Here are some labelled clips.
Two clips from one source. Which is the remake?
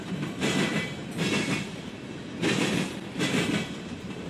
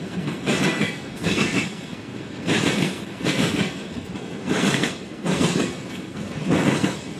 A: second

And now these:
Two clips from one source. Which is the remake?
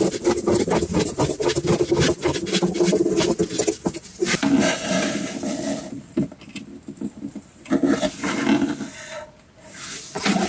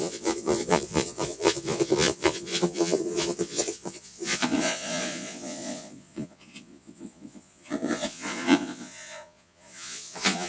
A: second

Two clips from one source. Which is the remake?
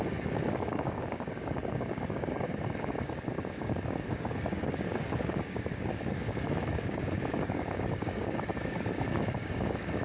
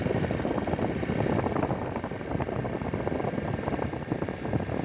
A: first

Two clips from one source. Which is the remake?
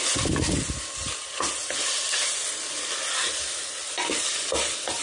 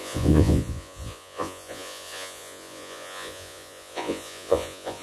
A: second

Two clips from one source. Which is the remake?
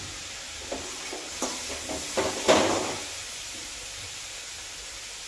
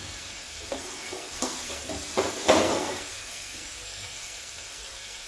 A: second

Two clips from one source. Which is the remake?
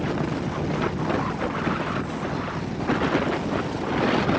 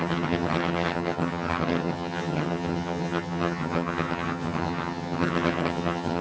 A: second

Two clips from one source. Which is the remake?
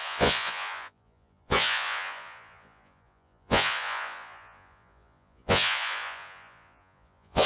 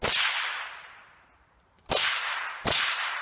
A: first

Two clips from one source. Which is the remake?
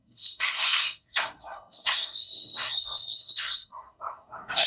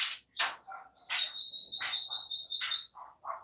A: first